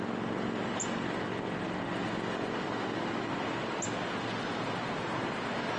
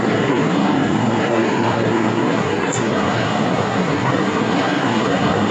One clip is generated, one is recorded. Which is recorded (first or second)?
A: first